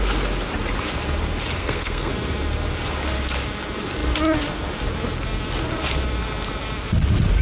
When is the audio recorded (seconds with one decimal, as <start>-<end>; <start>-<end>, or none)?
0.0-1.6; 2.1-7.4